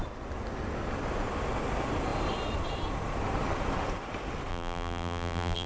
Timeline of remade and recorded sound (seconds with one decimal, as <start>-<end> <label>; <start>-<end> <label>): 0.0-4.5 recorded; 4.5-5.7 remade